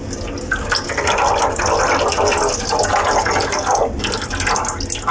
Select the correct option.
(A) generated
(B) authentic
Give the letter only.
B